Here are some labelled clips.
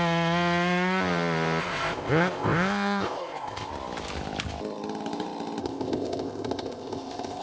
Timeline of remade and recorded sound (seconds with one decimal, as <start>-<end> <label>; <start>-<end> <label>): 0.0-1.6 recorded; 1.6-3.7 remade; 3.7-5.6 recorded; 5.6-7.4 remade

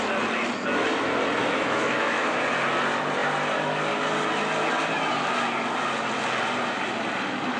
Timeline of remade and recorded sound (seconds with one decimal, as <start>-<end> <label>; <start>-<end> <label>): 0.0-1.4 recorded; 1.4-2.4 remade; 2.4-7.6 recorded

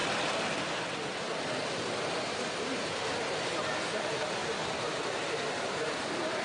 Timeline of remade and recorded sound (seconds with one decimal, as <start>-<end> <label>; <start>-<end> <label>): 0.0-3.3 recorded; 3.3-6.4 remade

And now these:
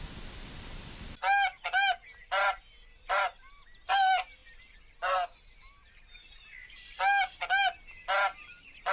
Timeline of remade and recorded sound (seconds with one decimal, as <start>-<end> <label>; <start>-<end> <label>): 0.0-8.9 recorded